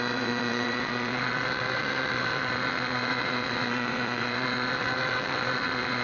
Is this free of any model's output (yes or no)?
no